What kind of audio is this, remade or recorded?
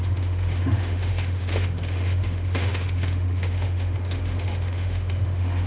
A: remade